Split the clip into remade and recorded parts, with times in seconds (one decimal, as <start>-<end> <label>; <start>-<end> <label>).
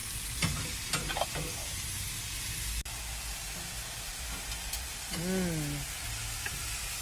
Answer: 0.0-7.0 recorded